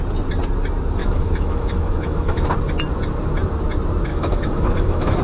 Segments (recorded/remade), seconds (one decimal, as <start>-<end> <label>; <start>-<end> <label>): 0.0-1.0 recorded; 1.0-2.5 remade; 2.5-4.1 recorded; 4.1-5.2 remade